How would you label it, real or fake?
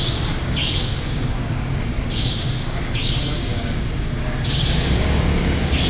fake